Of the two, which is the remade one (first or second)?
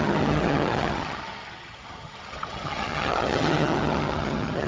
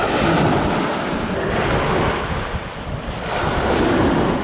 first